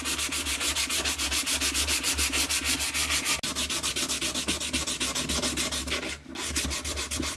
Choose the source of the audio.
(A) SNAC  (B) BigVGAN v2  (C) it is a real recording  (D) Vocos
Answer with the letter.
C